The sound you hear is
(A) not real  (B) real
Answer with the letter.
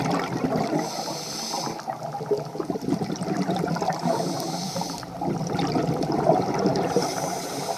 A